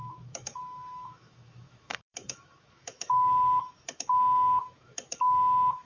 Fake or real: fake